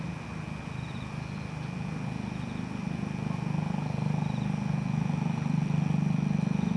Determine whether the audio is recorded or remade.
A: recorded